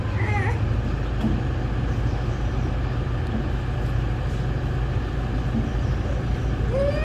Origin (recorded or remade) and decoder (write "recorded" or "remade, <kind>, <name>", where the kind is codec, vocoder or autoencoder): recorded